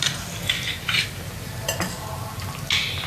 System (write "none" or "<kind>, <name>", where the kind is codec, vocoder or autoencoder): none